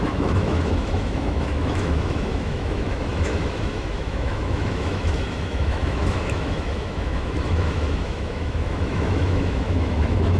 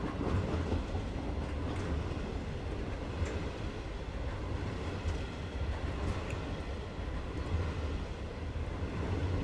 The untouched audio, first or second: second